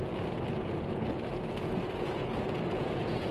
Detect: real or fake fake